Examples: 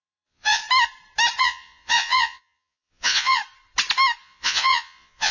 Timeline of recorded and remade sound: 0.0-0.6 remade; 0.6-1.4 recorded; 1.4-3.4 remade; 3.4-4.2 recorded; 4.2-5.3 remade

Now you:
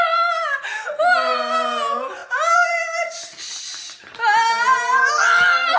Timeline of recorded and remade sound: 0.0-5.8 recorded

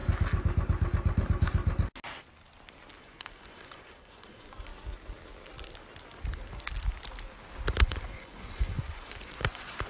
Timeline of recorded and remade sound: 0.0-3.0 recorded; 3.0-4.7 remade; 4.7-7.8 recorded; 7.8-9.9 remade

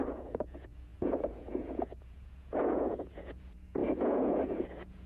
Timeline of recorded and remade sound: 0.0-5.1 remade